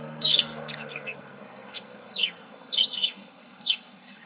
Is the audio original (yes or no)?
no